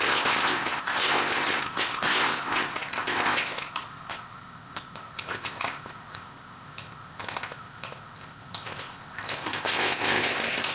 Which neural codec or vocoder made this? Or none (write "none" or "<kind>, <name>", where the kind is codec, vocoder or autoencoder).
codec, ZipCodec